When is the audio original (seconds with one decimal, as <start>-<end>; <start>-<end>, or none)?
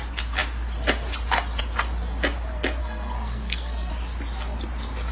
0.0-2.8; 3.9-5.1